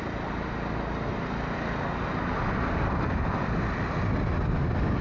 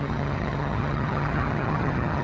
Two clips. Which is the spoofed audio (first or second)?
second